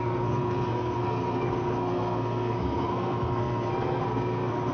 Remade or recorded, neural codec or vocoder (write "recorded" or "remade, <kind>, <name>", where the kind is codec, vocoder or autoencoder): remade, codec, SNAC